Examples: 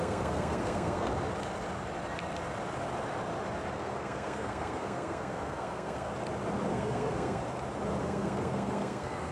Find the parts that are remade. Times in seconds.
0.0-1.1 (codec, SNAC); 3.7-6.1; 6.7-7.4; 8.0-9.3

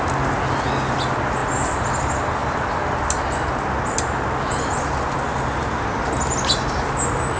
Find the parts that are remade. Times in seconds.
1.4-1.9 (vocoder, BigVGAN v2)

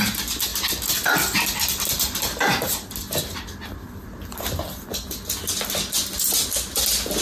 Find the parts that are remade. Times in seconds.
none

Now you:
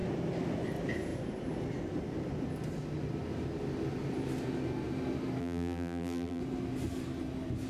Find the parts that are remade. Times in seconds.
5.4-6.4 (vocoder, BigVGAN v2)